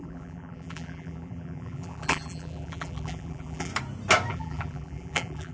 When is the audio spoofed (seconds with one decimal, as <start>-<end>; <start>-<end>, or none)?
0.0-3.7; 4.3-5.5

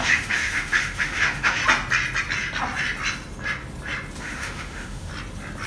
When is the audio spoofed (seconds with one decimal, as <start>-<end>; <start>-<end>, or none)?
0.0-1.6; 4.2-5.1

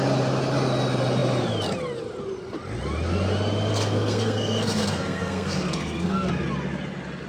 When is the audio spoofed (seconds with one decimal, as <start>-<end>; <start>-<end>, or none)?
3.7-6.3

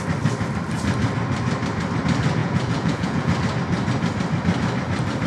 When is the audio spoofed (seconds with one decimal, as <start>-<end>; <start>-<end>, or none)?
2.4-3.3

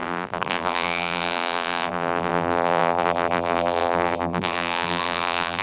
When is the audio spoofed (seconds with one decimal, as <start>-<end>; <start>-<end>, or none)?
0.0-5.6

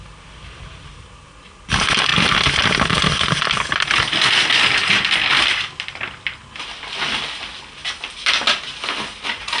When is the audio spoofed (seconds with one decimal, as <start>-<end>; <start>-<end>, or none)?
none

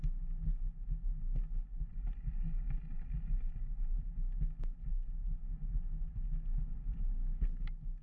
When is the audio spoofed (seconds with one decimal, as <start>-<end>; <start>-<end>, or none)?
1.9-4.1; 4.9-7.2